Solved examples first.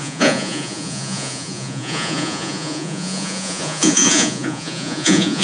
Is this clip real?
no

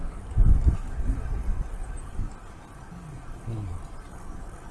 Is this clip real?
yes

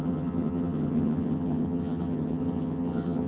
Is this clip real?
no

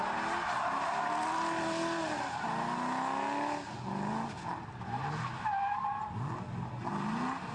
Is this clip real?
yes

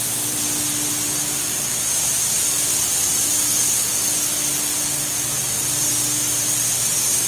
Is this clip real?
yes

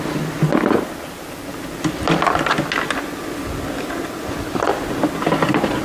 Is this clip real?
yes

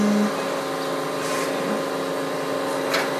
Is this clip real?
yes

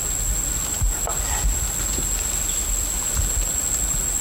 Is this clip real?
yes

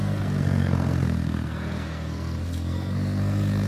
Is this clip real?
no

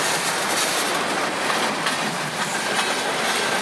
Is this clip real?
yes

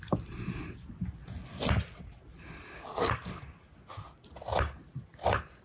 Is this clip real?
yes